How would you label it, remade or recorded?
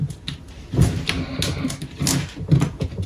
recorded